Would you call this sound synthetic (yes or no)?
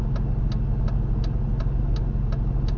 no